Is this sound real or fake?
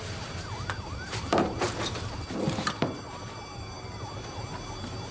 real